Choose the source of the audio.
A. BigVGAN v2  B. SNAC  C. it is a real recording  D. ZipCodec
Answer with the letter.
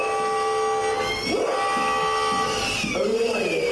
C